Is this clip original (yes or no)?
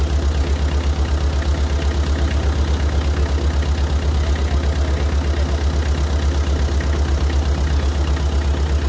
yes